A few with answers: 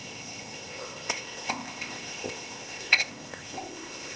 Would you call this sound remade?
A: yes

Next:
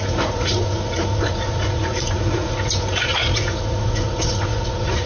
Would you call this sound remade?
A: yes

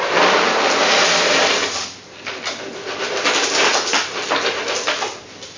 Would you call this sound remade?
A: no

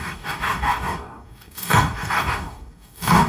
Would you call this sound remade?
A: yes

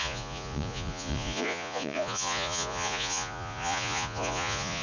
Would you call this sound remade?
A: yes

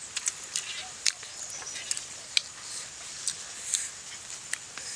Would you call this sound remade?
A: no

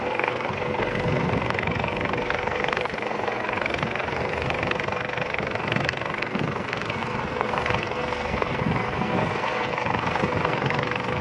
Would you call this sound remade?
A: yes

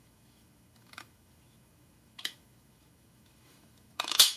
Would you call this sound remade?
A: yes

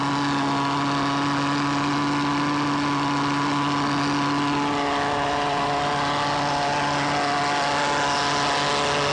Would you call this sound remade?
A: no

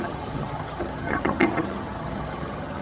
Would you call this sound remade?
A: yes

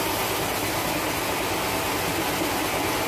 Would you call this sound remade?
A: no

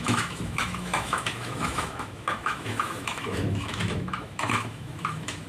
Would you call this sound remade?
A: yes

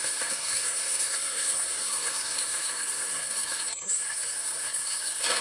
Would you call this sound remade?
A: yes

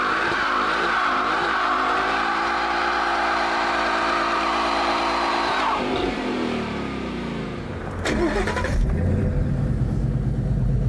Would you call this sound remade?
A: yes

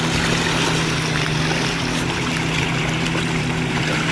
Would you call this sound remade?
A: no